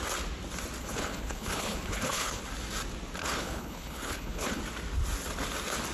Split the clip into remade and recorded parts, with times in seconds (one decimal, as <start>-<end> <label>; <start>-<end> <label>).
0.0-0.8 recorded; 0.8-2.4 remade; 2.4-3.2 recorded; 3.2-4.6 remade; 4.6-5.9 recorded